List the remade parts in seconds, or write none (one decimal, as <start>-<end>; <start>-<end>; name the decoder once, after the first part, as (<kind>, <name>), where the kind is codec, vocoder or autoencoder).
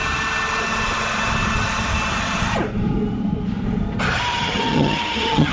4.3-5.5 (vocoder, HiFi-GAN)